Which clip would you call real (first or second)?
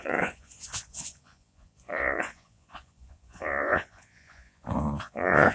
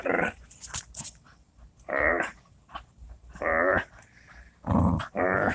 second